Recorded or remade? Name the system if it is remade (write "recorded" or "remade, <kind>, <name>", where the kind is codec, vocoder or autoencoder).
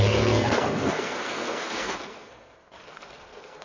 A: remade, codec, SNAC